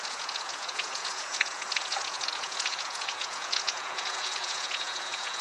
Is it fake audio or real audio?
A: fake